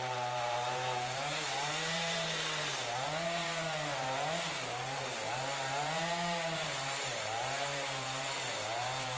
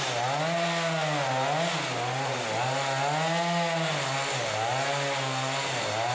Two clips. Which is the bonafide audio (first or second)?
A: second